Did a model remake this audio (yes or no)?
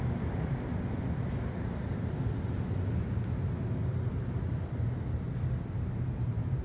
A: no